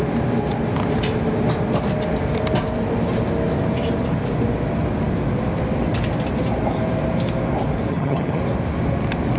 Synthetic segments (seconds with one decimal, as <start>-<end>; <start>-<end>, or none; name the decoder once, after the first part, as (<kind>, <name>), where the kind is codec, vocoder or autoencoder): 7.9-8.4 (vocoder, HiFi-GAN)